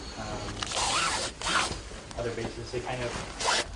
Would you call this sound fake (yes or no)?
no